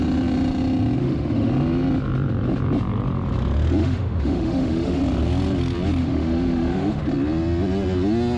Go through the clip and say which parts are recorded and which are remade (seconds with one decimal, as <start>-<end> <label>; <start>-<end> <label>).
0.0-1.0 recorded; 1.0-1.5 remade; 1.5-3.8 recorded; 3.8-5.0 remade; 5.0-6.0 recorded; 6.0-7.0 remade; 7.0-8.4 recorded